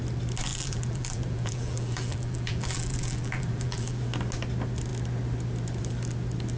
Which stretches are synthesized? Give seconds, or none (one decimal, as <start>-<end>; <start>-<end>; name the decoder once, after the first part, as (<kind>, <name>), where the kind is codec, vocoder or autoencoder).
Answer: 0.5-4.0 (vocoder, BigVGAN v2)